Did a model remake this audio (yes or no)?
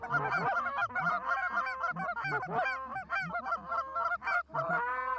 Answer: no